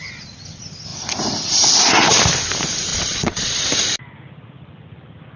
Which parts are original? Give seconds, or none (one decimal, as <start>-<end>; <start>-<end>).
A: 0.0-2.9; 3.6-5.4